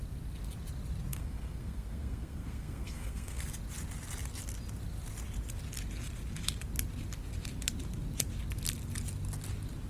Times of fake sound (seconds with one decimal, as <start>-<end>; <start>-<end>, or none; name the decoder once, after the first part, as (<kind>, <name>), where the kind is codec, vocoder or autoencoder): 1.1-3.4 (codec, SNAC)